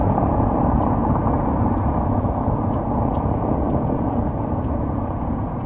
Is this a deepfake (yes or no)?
yes